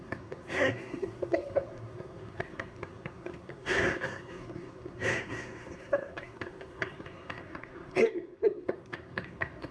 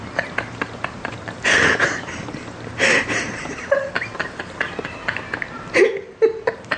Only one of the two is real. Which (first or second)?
second